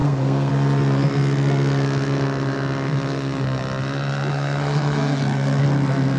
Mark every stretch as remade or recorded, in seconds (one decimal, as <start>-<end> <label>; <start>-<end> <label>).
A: 0.0-0.5 remade; 0.5-4.3 recorded; 4.3-5.6 remade; 5.6-6.2 recorded